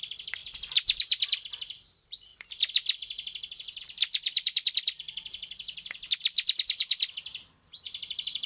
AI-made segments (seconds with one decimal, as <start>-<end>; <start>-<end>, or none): 0.0-2.3; 3.8-6.8; 7.3-8.5